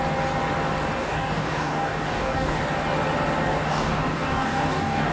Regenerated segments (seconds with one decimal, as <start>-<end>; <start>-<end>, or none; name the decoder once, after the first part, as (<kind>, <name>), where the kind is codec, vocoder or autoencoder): 1.0-2.6 (codec, DAC); 3.5-5.1